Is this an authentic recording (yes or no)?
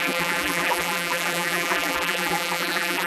no